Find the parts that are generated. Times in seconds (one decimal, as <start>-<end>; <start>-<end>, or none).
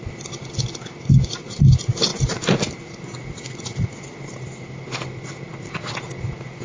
2.1-2.6